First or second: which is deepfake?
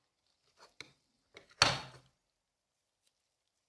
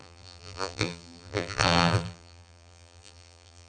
second